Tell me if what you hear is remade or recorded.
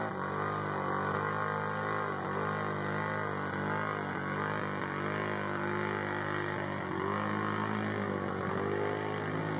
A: recorded